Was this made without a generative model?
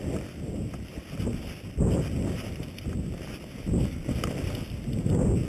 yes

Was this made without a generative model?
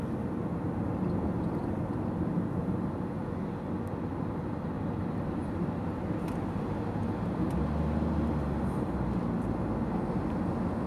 yes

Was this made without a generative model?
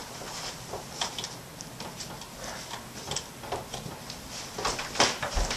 yes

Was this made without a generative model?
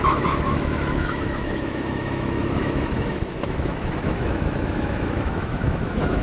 no